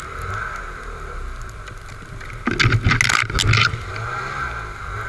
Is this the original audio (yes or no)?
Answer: yes